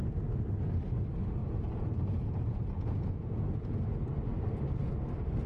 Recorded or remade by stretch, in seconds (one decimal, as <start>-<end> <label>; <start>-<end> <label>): 0.0-1.4 recorded; 1.4-3.8 remade; 3.8-5.5 recorded